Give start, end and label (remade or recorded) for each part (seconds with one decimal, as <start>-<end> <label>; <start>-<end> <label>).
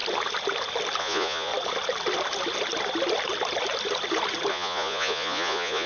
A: 0.0-1.0 recorded; 1.0-1.5 remade; 1.5-4.5 recorded; 4.5-5.9 remade